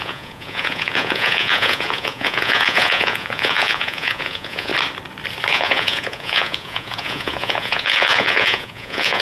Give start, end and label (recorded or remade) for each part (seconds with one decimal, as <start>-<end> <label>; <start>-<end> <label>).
0.0-4.7 remade; 4.7-5.5 recorded; 5.5-9.2 remade